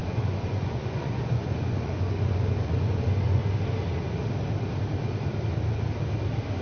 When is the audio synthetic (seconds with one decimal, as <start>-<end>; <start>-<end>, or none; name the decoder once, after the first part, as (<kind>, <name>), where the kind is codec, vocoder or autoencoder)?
0.0-3.4 (vocoder, Vocos)

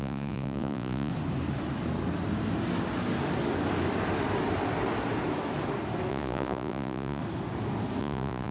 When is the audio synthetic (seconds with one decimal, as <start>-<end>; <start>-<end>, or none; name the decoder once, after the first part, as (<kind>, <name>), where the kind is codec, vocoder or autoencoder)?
0.0-1.1 (vocoder, Vocos); 6.1-7.2; 8.0-8.5

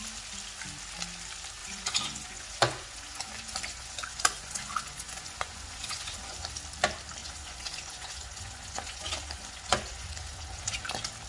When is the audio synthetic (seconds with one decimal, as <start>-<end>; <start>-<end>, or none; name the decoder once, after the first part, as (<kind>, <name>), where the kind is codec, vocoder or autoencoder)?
1.6-6.5 (vocoder, Vocos); 7.2-10.8

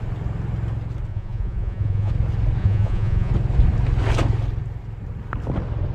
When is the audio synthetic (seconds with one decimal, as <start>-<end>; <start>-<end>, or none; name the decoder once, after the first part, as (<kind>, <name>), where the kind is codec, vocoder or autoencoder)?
1.1-2.1 (vocoder, Vocos); 2.6-3.3

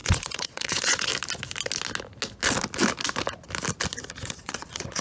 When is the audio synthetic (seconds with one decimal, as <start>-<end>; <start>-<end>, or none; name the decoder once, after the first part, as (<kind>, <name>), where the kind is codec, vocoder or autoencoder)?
0.0-1.1 (vocoder, Vocos); 4.1-5.0

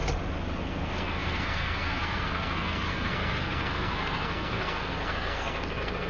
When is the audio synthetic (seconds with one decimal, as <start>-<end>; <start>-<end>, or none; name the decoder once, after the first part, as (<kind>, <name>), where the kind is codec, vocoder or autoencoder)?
0.6-6.1 (codec, SNAC)